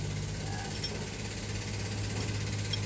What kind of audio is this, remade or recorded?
recorded